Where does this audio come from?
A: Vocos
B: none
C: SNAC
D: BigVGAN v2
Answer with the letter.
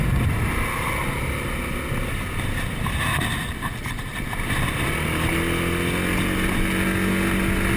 B